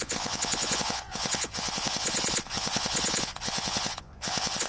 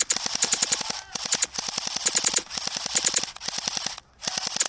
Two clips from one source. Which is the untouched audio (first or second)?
second